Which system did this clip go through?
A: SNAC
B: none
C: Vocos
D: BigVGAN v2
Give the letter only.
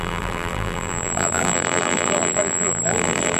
D